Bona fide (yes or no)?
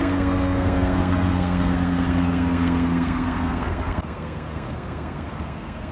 no